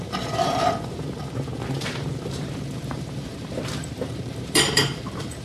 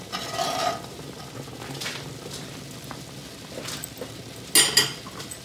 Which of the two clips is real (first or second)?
second